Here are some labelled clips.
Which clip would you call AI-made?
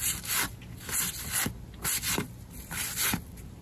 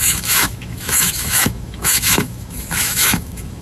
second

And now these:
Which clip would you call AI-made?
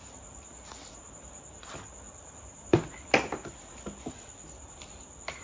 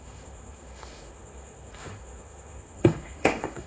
second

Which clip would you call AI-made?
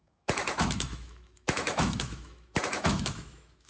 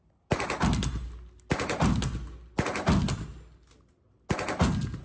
first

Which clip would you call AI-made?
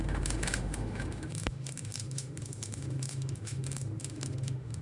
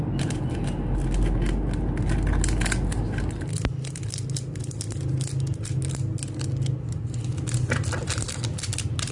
first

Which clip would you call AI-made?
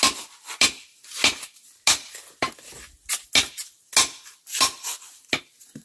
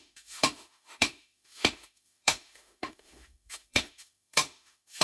second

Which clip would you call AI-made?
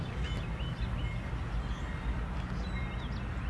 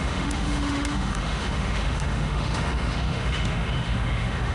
second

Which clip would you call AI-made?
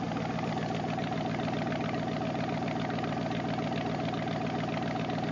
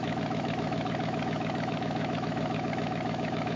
second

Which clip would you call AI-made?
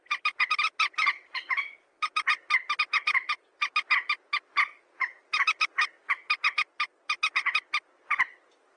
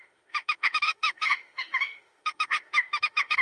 second